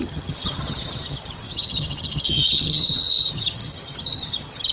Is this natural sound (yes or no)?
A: no